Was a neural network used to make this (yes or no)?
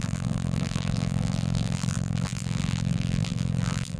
yes